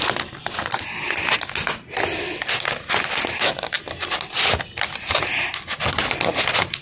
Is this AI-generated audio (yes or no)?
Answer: no